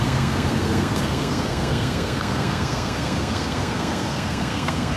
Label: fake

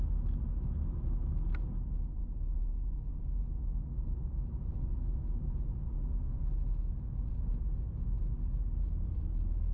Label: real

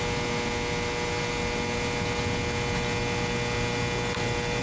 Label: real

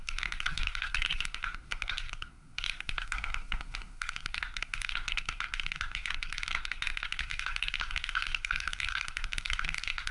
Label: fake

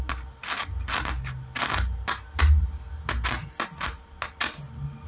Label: real